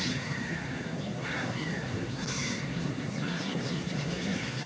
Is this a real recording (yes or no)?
no